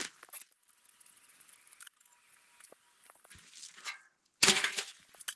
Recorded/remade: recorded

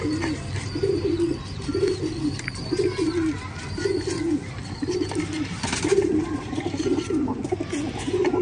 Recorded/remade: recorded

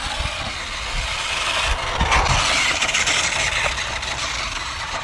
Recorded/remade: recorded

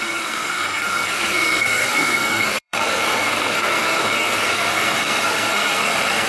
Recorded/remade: remade